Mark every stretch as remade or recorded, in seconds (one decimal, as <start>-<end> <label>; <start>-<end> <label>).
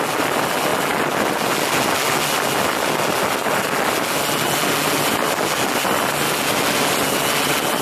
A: 0.0-7.8 recorded